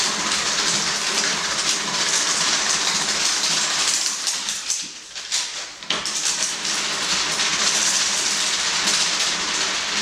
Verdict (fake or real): fake